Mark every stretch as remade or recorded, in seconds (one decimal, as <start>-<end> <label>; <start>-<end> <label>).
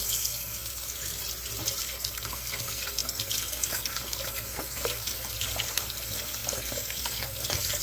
0.0-1.2 remade; 1.2-1.8 recorded; 1.8-7.8 remade